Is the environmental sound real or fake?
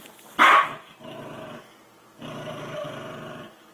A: real